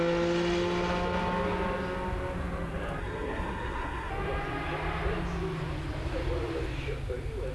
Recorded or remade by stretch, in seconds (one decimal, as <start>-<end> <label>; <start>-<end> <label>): 0.0-3.0 recorded; 3.0-4.1 remade; 4.1-7.5 recorded

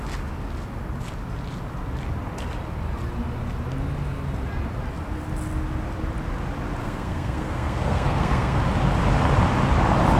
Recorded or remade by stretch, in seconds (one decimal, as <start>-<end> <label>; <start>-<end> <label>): 0.0-6.8 recorded; 6.8-8.6 remade; 8.6-10.2 recorded

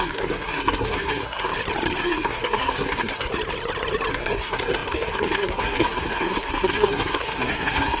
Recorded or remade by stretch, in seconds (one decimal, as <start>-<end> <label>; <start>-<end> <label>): 0.0-1.5 remade; 1.5-2.0 recorded; 2.0-3.3 remade; 3.3-4.1 recorded; 4.1-8.0 remade

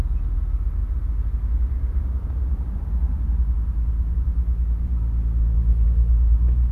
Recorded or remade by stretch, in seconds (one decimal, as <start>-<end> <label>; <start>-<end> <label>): 0.0-6.7 recorded

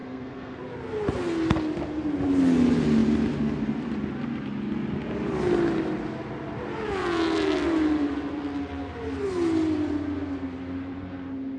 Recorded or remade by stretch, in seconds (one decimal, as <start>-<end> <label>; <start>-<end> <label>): 0.0-0.6 remade; 0.6-11.6 recorded

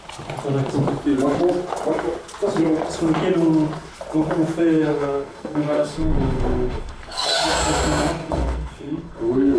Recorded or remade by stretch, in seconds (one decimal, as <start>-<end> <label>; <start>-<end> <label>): 0.0-4.6 recorded; 4.6-7.3 remade; 7.3-8.2 recorded; 8.2-9.6 remade

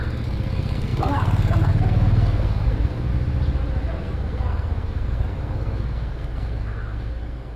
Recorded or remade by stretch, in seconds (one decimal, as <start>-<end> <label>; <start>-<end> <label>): 0.0-3.1 remade; 3.1-3.9 recorded; 3.9-7.6 remade

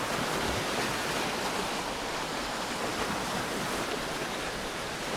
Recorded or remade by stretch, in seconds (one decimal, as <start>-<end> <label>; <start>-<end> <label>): 0.0-5.2 recorded